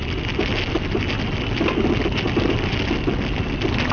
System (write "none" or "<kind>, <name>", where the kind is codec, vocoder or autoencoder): none